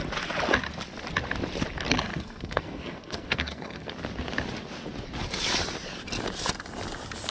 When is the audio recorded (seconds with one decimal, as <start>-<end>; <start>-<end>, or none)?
0.0-2.1; 3.9-7.3